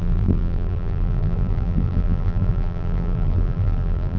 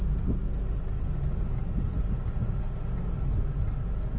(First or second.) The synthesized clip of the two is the first